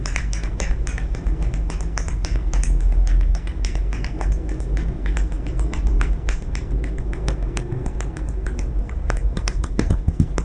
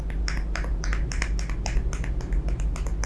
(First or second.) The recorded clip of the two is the second